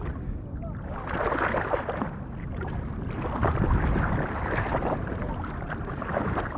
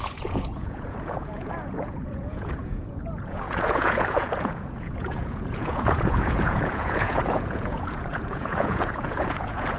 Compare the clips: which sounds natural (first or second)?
first